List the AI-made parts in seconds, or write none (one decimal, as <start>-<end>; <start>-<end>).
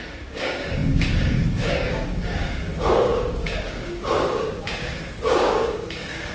0.0-6.3